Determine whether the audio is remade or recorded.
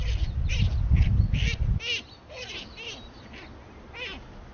recorded